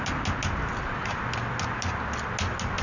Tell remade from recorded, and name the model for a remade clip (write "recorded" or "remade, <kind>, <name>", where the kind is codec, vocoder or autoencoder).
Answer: recorded